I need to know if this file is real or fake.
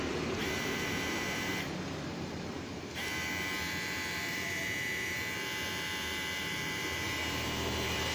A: fake